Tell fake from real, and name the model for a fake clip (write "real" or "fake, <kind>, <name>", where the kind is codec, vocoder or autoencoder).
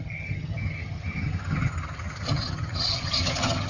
fake, vocoder, HiFi-GAN